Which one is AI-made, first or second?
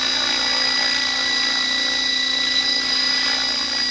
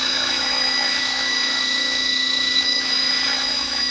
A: second